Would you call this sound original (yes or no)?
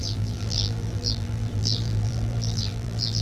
no